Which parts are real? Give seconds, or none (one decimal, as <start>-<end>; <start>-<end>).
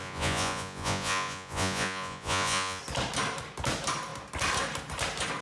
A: 2.8-5.4